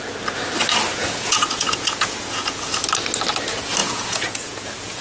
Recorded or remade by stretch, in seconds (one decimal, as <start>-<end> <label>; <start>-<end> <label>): 0.0-0.9 recorded; 0.9-2.7 remade; 2.7-3.8 recorded; 3.8-5.0 remade